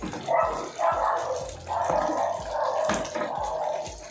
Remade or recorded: recorded